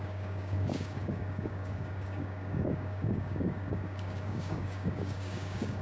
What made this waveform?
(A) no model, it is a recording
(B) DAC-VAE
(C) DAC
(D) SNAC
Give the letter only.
C